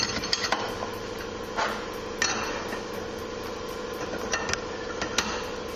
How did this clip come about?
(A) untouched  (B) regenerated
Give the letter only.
A